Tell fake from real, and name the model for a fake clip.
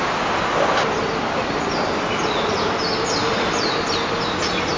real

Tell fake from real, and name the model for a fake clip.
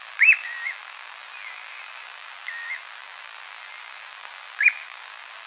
fake, vocoder, BigVGAN v2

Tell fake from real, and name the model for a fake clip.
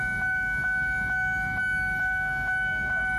fake, autoencoder, DAC-VAE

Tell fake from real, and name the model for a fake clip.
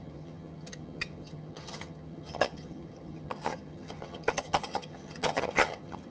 fake, vocoder, HiFi-GAN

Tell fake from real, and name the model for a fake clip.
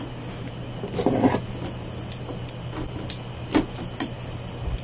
real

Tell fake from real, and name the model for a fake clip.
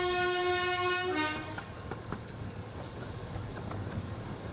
fake, codec, DAC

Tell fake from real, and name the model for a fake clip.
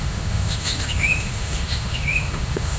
fake, autoencoder, DAC-VAE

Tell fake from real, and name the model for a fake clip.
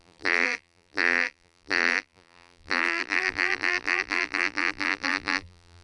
fake, vocoder, BigVGAN v2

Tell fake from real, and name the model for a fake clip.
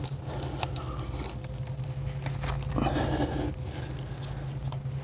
real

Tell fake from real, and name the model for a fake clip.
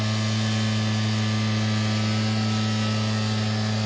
real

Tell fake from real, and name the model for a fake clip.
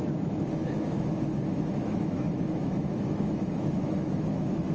fake, autoencoder, DAC-VAE